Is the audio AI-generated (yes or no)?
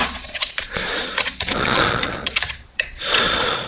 yes